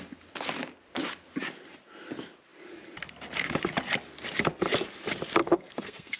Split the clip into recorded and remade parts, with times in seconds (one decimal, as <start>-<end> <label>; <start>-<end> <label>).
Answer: 0.0-5.4 recorded; 5.4-6.2 remade